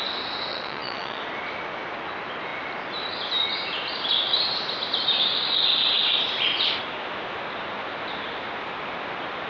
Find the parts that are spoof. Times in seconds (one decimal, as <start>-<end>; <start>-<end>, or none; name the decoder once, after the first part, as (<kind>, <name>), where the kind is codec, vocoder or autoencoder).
0.5-1.2 (vocoder, Vocos)